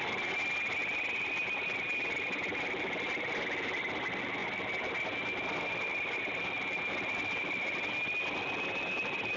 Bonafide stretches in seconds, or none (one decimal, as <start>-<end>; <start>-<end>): 0.0-9.4